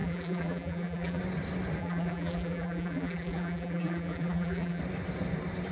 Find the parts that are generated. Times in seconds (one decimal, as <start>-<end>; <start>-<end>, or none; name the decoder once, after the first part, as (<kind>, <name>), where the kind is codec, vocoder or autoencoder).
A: 0.0-1.2 (vocoder, BigVGAN v2); 1.8-4.8

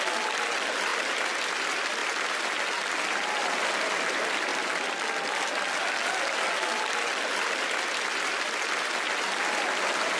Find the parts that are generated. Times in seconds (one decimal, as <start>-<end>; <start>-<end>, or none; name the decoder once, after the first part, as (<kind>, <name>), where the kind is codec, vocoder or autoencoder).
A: 2.0-2.9 (vocoder, BigVGAN v2)